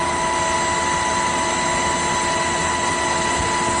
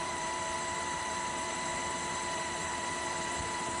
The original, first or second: first